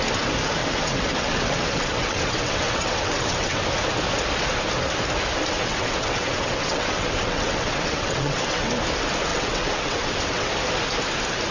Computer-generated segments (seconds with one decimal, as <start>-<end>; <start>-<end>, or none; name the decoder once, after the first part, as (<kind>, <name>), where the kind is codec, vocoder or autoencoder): 0.6-3.6 (vocoder, WaveNeXt); 5.5-8.7; 9.3-10.5